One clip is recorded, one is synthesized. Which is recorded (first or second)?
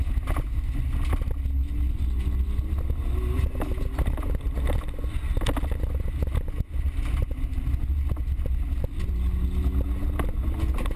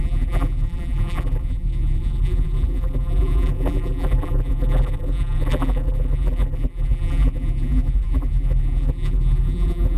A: first